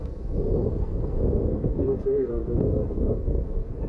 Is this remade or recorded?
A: remade